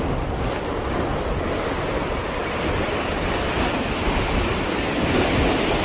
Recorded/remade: recorded